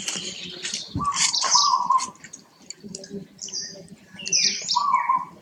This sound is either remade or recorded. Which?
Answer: remade